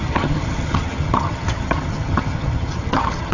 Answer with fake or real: fake